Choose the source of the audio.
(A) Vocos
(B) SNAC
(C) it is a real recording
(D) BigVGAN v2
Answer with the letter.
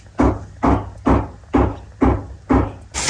C